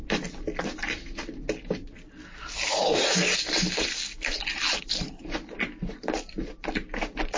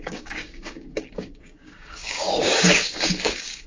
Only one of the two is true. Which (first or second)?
first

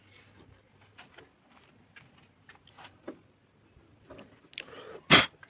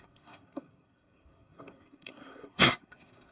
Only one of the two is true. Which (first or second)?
first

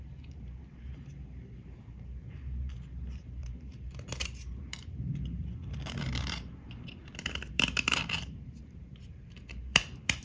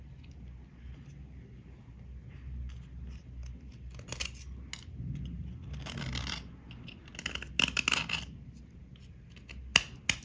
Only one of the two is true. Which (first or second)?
second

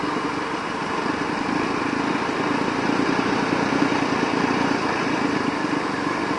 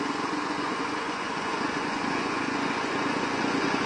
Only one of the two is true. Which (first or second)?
first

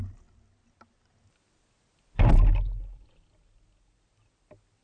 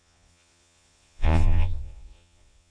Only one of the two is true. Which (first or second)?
first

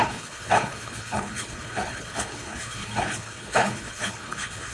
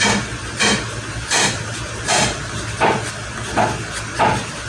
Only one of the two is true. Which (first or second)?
second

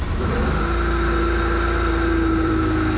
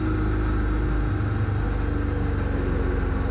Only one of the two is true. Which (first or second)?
second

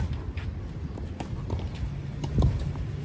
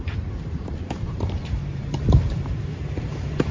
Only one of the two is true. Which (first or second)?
first